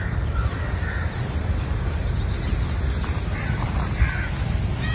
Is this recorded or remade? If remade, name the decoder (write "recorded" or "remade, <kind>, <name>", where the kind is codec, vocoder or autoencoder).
remade, vocoder, BigVGAN v2